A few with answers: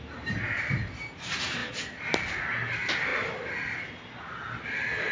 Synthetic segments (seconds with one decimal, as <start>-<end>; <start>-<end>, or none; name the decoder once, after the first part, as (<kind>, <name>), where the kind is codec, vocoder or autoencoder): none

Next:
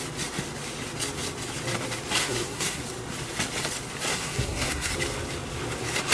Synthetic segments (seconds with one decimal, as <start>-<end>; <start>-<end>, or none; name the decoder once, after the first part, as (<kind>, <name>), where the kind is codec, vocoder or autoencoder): 2.2-2.8 (codec, SNAC); 4.1-4.9

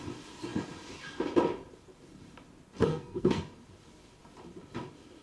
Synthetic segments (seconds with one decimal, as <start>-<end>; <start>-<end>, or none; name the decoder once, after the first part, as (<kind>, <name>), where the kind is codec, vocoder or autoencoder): 2.9-3.4 (codec, SNAC)